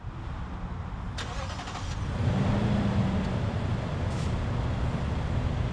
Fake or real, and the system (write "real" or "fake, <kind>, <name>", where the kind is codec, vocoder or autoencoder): real